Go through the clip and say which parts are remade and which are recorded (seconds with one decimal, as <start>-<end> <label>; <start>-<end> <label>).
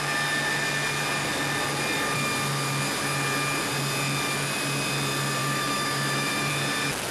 0.0-5.4 recorded; 5.4-6.5 remade; 6.5-7.1 recorded